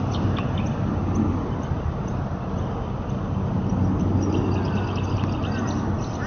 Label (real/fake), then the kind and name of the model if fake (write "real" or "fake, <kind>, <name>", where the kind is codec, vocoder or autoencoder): real